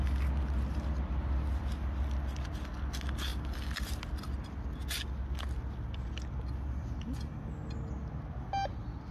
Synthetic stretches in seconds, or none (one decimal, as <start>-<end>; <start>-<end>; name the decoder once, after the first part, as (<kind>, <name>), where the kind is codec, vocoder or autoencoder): none